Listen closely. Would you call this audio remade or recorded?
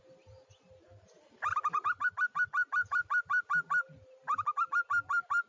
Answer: remade